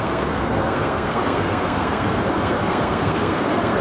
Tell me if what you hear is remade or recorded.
remade